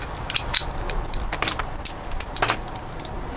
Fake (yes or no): no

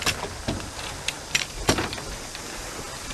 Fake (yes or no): no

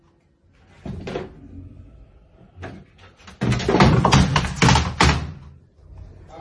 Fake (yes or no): no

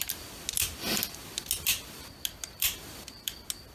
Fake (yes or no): no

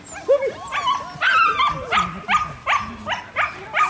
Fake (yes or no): no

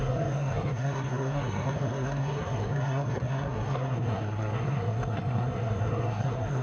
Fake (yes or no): yes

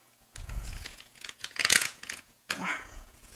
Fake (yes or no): yes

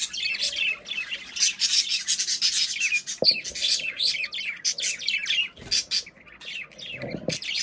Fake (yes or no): no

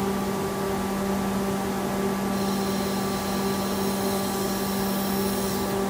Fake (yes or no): no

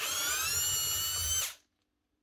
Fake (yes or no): no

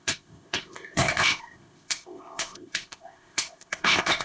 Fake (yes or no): yes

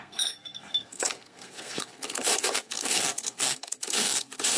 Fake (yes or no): yes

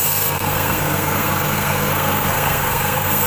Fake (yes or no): yes